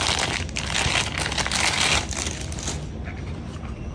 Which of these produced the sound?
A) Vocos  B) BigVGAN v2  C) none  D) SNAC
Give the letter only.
C